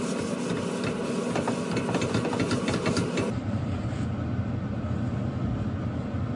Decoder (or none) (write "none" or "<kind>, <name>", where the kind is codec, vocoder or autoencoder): none